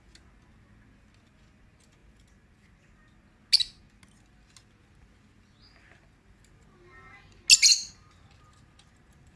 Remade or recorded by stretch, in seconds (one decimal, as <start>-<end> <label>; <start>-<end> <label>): 0.0-9.4 recorded